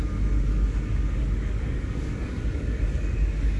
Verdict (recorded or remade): remade